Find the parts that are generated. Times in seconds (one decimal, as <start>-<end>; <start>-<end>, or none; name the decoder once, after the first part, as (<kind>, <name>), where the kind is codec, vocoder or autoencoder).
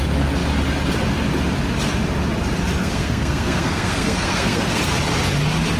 2.8-4.9 (codec, SNAC)